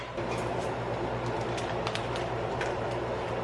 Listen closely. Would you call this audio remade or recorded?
remade